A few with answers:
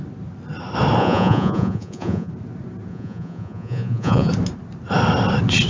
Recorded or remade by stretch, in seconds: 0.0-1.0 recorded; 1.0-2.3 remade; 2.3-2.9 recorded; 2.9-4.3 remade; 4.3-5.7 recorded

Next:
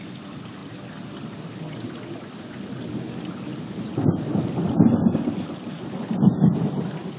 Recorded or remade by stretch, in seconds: 0.0-7.2 recorded

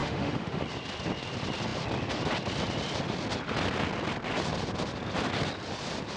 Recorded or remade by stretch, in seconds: 0.0-0.6 remade; 0.6-6.2 recorded

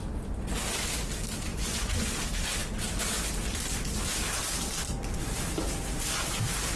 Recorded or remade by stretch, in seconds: 0.0-1.5 recorded; 1.5-2.1 remade; 2.1-6.8 recorded

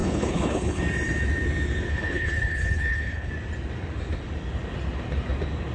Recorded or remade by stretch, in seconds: 0.0-0.8 remade; 0.8-1.9 recorded; 1.9-3.3 remade; 3.3-5.7 recorded

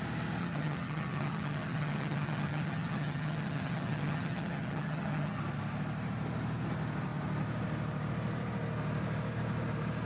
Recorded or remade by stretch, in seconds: 0.0-0.4 recorded; 0.4-5.4 remade; 5.4-10.1 recorded